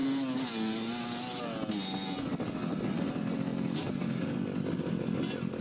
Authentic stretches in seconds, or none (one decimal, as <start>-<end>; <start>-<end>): 0.0-5.6